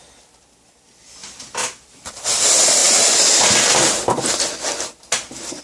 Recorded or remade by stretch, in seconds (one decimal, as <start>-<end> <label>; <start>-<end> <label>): 0.0-5.6 recorded